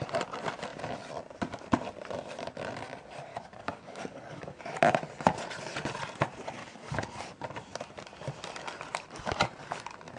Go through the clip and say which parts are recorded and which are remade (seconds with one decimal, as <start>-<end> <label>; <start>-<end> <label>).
0.0-3.3 recorded; 3.3-4.8 remade; 4.8-6.6 recorded; 6.6-7.2 remade; 7.2-10.2 recorded